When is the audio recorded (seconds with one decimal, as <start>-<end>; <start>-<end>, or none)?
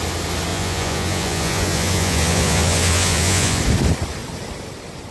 0.0-0.5; 3.6-5.1